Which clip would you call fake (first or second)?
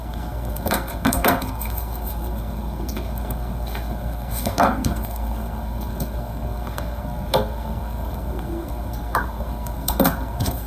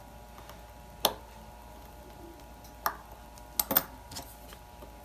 first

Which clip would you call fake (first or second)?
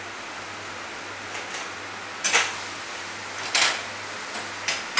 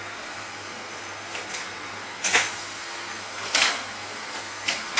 second